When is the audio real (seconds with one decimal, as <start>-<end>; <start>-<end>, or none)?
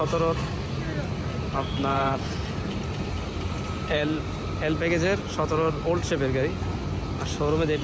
0.0-1.9; 4.3-7.8